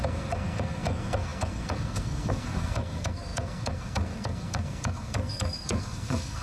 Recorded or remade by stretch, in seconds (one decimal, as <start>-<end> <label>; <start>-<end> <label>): 0.0-6.4 remade